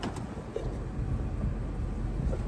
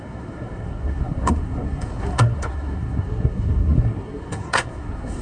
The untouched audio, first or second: first